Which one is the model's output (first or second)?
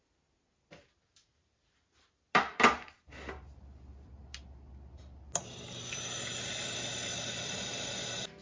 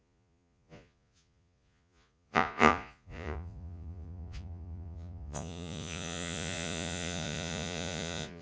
second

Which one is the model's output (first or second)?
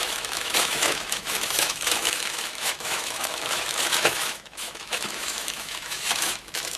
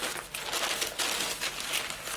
first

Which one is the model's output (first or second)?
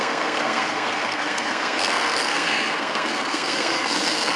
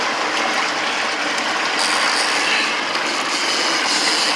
first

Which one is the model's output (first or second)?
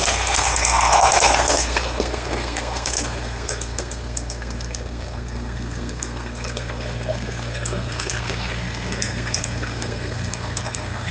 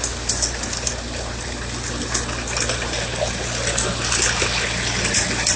first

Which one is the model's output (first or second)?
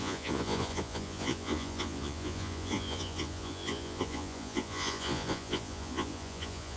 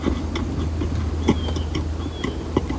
first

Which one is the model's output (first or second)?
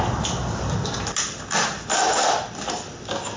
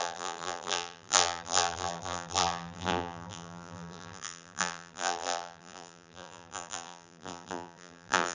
second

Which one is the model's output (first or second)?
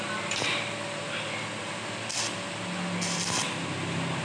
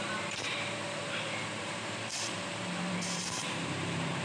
second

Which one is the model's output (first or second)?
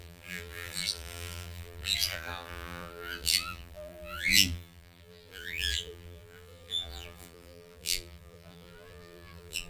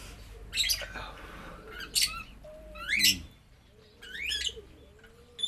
first